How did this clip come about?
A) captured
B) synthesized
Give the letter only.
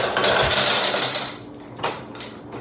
A